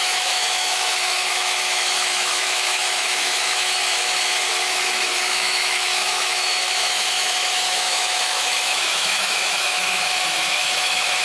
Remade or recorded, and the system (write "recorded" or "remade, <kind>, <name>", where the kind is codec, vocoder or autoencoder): remade, autoencoder, DAC-VAE